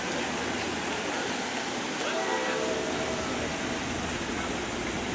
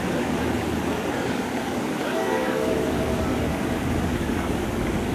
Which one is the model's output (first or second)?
second